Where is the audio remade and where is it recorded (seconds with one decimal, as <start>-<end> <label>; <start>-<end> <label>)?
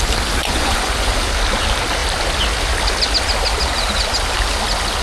0.0-0.4 recorded; 0.4-1.1 remade; 1.1-5.0 recorded